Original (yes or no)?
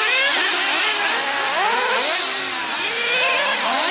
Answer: yes